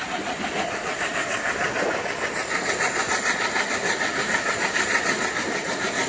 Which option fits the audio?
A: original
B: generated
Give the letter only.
A